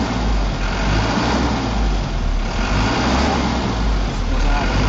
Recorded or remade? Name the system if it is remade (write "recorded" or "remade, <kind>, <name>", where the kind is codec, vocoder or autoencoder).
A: recorded